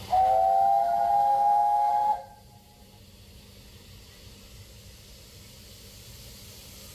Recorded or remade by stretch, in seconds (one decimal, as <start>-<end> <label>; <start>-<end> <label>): 0.0-1.3 recorded; 1.3-1.9 remade; 1.9-6.9 recorded